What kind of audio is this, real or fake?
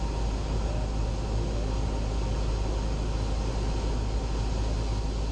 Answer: real